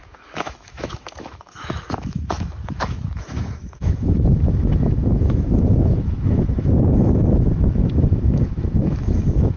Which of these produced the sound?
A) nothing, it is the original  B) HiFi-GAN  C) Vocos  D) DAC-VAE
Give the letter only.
D